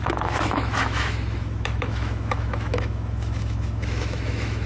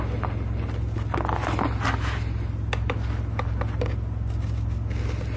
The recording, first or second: second